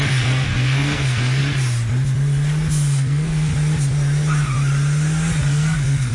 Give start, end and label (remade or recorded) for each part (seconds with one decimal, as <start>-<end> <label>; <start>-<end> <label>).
0.0-1.4 remade; 1.4-2.7 recorded; 2.7-3.5 remade; 3.5-5.4 recorded; 5.4-6.1 remade